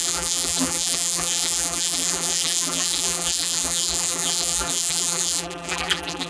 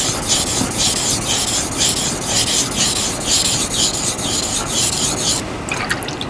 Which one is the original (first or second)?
second